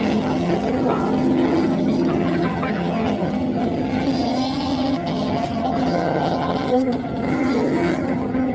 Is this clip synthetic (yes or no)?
yes